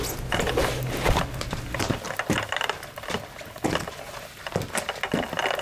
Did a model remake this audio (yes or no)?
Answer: no